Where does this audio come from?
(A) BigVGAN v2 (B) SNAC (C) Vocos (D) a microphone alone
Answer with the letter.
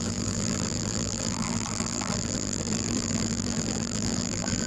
A